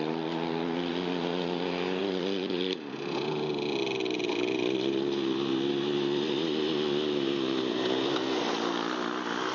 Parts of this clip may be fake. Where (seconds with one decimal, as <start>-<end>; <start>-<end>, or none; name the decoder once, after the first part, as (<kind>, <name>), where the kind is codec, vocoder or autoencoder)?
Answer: 2.0-3.3 (vocoder, BigVGAN v2)